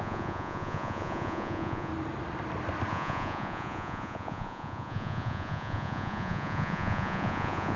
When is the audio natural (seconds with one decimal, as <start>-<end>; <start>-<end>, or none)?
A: 1.9-2.9